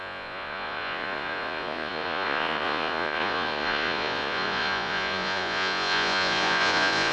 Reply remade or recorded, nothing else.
remade